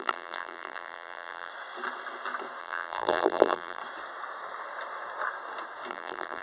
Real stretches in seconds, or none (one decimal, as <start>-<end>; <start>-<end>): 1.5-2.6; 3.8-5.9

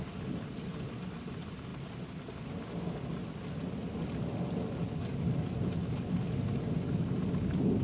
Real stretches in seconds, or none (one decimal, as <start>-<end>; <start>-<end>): 0.0-7.8

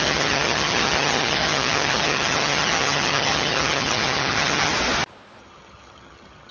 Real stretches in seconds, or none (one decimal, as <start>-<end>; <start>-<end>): 4.7-5.4

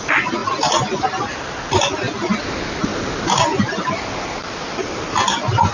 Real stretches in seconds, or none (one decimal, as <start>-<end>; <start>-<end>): 0.0-5.7

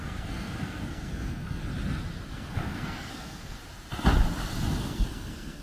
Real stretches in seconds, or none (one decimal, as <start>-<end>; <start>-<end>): 1.6-2.3; 3.6-4.7